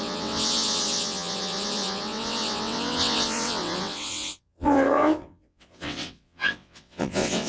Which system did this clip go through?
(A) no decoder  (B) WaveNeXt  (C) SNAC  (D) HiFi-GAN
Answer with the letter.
B